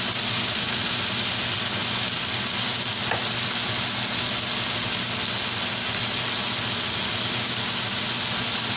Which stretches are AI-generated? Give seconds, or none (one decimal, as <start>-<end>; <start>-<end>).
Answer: none